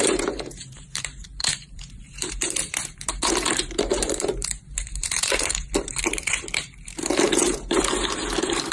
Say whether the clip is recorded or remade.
remade